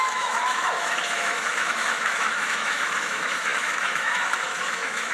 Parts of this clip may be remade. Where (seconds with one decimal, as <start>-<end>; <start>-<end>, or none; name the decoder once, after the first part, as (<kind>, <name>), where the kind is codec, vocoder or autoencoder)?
0.0-5.1 (autoencoder, DAC-VAE)